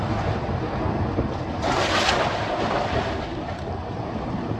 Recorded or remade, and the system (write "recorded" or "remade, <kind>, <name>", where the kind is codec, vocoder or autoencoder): recorded